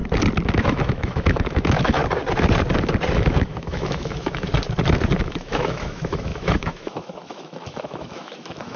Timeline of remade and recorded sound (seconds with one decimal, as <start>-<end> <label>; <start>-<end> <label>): 0.0-0.5 recorded; 0.5-2.0 remade; 2.0-3.1 recorded; 3.1-4.5 remade; 4.5-5.2 recorded; 5.2-8.8 remade